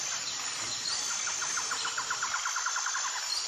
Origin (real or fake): real